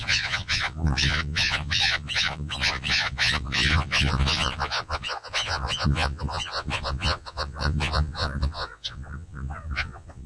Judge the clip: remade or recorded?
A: remade